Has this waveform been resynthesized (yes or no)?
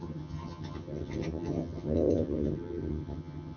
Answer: yes